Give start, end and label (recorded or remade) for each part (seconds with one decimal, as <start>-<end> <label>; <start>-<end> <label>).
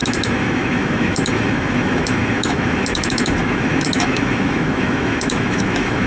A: 0.0-6.1 remade